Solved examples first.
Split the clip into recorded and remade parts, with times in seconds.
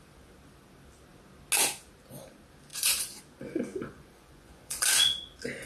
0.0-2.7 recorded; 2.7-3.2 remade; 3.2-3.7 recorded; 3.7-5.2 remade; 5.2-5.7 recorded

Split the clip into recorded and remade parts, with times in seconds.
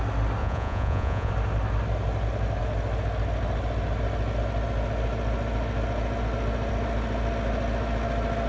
0.0-0.4 recorded; 0.4-1.3 remade; 1.3-8.5 recorded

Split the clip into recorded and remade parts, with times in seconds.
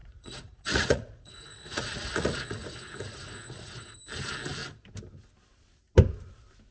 0.0-4.0 remade; 4.0-6.7 recorded